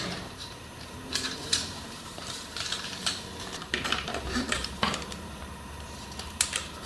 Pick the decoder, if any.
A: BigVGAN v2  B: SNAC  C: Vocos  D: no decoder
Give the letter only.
A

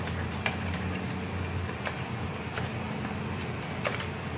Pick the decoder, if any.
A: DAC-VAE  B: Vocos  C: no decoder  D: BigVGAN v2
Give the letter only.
C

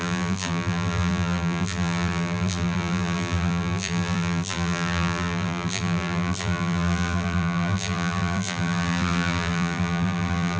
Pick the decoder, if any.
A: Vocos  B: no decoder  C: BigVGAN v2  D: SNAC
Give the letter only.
C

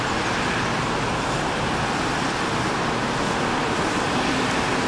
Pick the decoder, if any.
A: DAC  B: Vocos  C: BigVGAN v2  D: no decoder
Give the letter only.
D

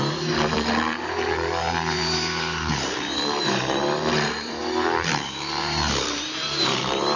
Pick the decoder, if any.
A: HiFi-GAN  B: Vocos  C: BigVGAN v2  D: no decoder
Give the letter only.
C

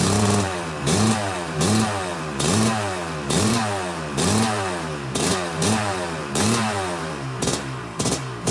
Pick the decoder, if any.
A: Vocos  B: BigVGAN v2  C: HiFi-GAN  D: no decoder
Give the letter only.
B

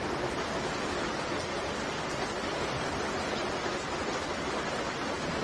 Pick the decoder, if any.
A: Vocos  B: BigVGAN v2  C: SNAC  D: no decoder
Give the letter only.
D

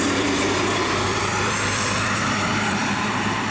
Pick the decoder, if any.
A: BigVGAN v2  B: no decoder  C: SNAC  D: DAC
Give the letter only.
A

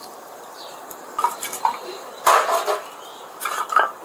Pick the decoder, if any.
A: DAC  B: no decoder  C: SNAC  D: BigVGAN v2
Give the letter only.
D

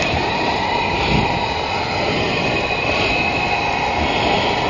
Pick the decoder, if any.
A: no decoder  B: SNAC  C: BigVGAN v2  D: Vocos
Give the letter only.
A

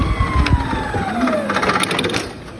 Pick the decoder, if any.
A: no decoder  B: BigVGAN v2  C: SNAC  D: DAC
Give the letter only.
A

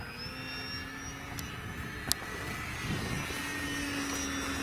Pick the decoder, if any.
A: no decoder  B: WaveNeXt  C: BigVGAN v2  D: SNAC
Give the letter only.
A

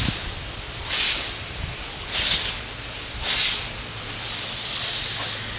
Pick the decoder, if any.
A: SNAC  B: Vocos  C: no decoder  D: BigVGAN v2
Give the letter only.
C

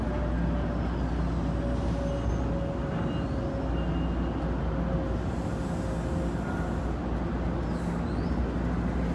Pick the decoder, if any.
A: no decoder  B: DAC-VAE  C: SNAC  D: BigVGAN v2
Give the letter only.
A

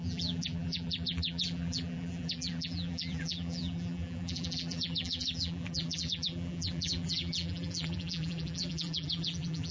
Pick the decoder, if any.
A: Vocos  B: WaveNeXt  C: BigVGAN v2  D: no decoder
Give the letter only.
C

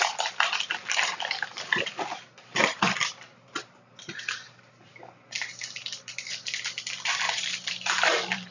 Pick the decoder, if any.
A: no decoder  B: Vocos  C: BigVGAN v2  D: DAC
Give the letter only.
C